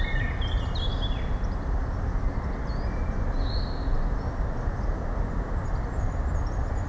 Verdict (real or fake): real